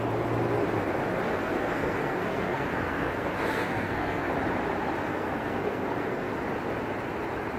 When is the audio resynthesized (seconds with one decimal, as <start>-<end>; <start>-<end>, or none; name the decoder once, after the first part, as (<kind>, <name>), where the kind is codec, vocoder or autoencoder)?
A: 1.3-4.3 (codec, SNAC); 5.1-6.3